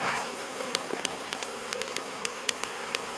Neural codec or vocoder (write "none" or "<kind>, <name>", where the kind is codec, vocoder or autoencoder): codec, SNAC